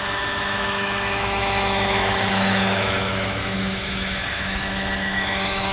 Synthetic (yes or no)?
yes